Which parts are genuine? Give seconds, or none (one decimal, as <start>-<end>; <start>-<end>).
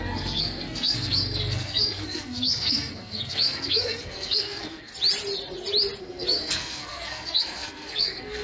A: 4.9-6.0